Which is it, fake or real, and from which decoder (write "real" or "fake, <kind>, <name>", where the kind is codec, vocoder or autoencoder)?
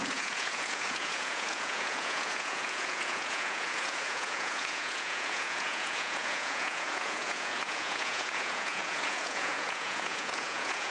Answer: fake, vocoder, Vocos